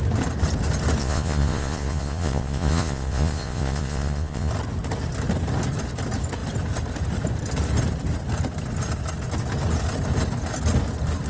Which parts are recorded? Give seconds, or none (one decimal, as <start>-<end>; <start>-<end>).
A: 0.0-1.0; 4.5-11.3